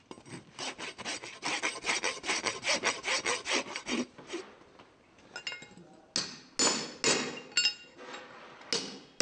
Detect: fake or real real